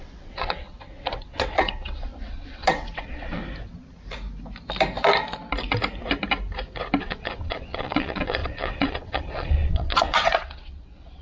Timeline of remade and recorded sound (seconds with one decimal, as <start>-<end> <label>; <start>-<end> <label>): 0.0-3.4 remade; 3.4-7.0 recorded; 7.0-11.2 remade